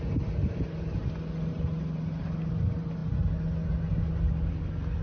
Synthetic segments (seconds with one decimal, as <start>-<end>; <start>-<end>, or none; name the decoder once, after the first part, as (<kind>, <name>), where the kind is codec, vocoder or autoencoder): 0.4-1.0 (vocoder, BigVGAN v2)